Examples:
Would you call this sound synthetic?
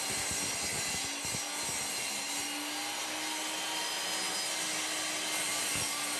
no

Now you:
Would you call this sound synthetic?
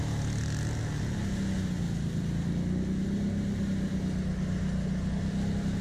no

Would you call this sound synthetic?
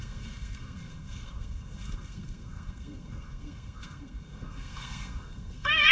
yes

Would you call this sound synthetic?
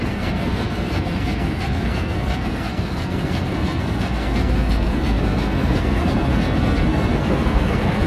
yes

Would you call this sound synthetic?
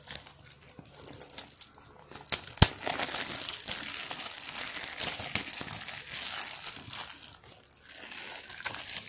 no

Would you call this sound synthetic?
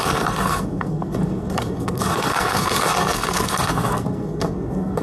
yes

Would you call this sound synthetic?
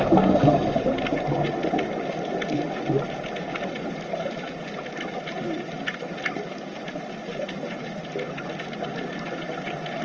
no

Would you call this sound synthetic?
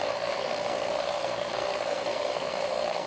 yes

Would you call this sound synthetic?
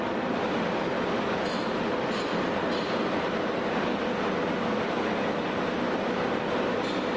no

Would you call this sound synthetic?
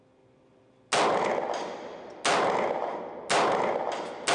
no